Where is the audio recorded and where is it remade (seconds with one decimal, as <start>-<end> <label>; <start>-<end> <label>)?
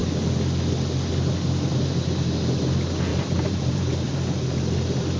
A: 0.0-3.1 recorded; 3.1-4.1 remade; 4.1-5.2 recorded